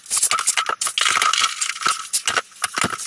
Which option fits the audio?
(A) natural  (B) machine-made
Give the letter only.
A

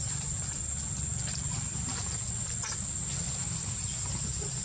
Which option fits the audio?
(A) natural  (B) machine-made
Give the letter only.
A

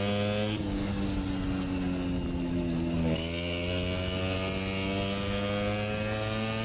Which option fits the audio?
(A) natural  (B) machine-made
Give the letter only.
A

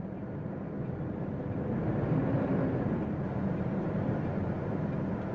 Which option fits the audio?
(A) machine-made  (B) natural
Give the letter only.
B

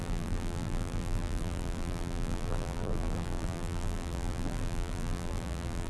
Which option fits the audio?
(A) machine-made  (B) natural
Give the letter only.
A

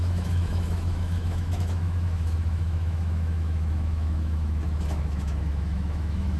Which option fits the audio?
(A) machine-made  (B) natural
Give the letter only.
A